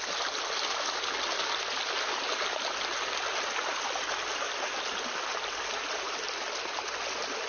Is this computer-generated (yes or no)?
no